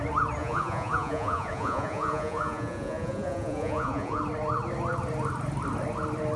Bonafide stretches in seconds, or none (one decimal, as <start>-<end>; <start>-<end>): 0.0-0.4; 4.2-6.4